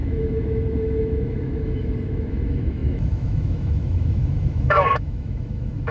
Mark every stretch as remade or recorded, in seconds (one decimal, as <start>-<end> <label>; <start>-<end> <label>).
0.0-5.9 remade